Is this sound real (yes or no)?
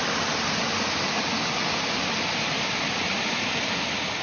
yes